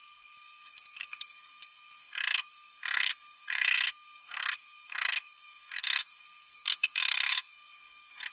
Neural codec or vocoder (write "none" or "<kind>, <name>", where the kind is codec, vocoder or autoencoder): codec, SNAC